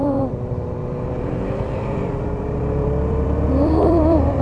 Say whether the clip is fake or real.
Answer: fake